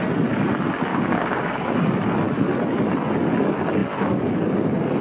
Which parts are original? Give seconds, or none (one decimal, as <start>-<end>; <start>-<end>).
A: 0.0-0.9; 1.7-5.0

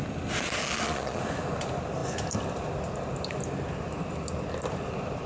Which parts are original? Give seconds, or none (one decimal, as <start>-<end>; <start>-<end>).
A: 0.0-0.6; 1.2-5.3